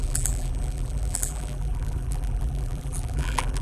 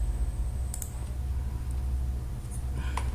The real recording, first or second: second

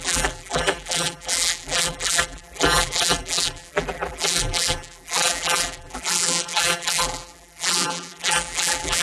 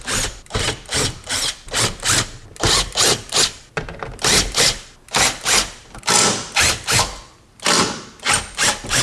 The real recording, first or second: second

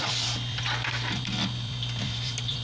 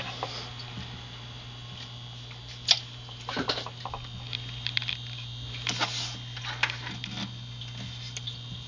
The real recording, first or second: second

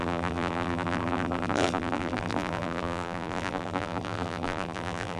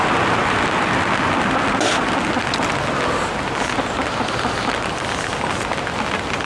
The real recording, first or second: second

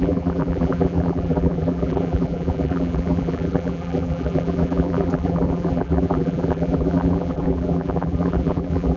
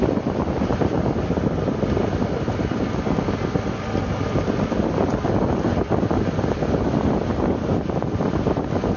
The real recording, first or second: second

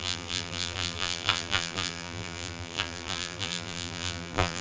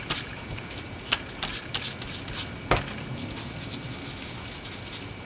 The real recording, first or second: second